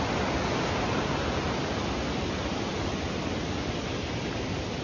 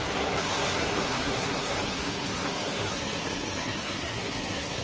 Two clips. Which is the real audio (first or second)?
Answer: first